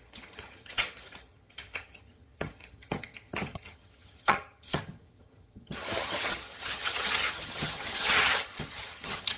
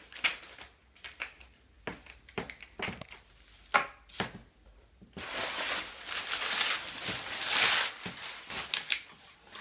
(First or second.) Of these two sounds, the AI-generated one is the first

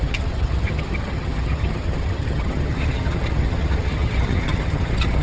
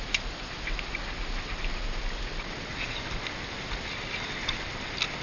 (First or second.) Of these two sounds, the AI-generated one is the first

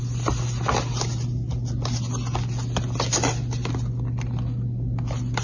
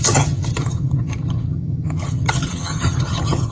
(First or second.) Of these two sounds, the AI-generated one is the second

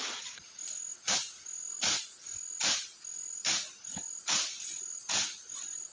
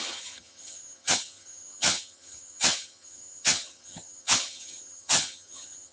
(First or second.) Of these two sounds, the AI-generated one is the second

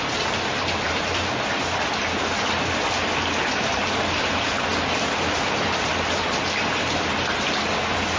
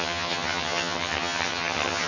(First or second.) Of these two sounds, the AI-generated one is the second